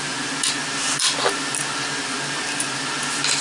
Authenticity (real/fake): real